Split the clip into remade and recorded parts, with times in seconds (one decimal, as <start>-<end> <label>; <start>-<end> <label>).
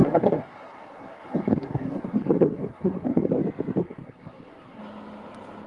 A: 0.0-3.4 remade; 3.4-3.8 recorded; 3.8-4.8 remade; 4.8-5.7 recorded